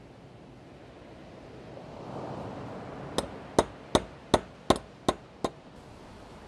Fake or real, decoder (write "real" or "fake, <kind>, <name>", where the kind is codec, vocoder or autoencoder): real